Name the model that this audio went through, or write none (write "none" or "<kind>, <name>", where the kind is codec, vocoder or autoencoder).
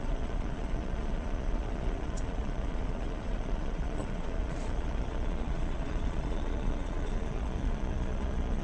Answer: vocoder, Vocos